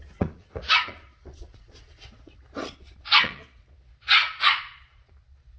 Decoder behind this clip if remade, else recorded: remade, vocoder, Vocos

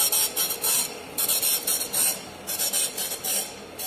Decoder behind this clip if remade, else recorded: recorded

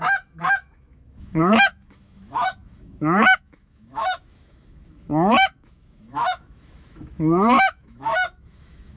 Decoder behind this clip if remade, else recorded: remade, autoencoder, DAC-VAE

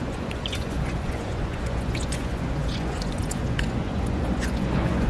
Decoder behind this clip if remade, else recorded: remade, vocoder, Vocos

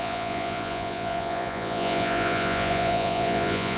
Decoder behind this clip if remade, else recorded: remade, vocoder, Vocos